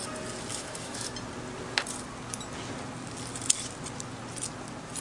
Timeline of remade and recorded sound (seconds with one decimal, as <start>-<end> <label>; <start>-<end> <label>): 0.0-0.5 recorded; 0.5-1.1 remade; 1.1-5.0 recorded